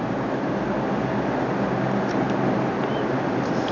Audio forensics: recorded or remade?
recorded